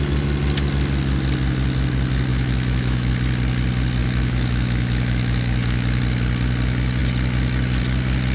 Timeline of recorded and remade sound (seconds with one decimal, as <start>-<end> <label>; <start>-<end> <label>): 0.0-2.3 recorded; 2.3-3.1 remade; 3.1-4.0 recorded; 4.0-6.0 remade; 6.0-8.3 recorded

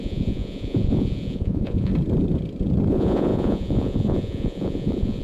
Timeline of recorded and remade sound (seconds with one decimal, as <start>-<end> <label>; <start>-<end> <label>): 0.0-1.9 remade; 1.9-2.9 recorded; 2.9-5.2 remade

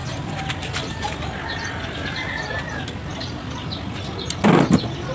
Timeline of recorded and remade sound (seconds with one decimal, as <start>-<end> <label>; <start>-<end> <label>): 0.0-5.1 recorded

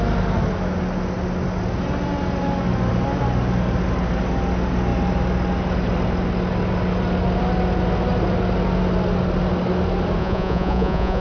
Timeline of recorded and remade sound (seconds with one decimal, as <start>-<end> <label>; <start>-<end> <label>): 0.0-10.2 recorded; 10.2-11.2 remade

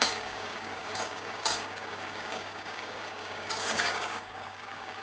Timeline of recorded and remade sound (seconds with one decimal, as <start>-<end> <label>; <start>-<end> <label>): 0.0-5.0 remade

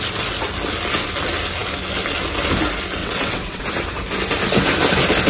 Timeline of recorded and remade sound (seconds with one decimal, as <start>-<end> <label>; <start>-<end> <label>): 0.0-3.0 recorded; 3.0-3.6 remade; 3.6-5.3 recorded